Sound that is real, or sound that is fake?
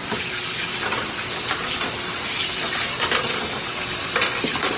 fake